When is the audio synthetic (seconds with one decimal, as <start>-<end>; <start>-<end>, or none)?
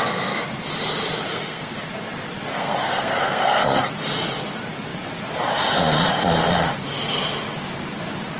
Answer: 1.3-1.9; 2.5-3.8